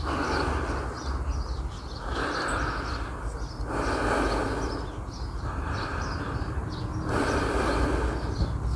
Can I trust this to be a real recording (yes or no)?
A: yes